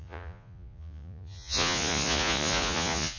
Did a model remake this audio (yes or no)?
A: yes